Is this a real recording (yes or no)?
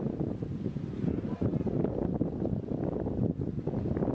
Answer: yes